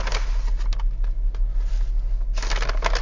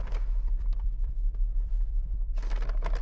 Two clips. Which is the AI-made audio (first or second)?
second